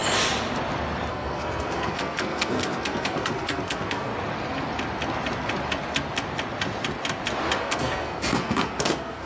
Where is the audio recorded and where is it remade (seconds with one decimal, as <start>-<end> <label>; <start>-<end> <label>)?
0.0-1.1 recorded; 1.1-4.1 remade; 4.1-7.6 recorded; 7.6-9.3 remade